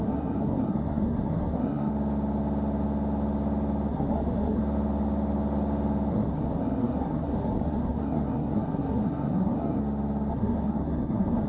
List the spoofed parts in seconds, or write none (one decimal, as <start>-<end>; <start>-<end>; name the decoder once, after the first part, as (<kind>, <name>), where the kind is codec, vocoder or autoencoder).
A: 0.0-1.9 (codec, SNAC); 3.9-4.6; 6.1-9.8; 10.3-11.5